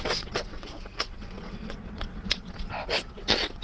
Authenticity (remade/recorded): remade